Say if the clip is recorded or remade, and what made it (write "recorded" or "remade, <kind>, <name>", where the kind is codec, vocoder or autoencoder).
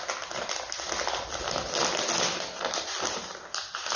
recorded